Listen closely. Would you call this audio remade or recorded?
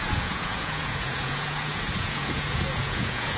remade